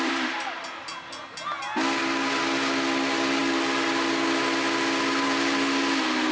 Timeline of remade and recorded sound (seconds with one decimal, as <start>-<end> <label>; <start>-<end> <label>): 0.0-6.3 recorded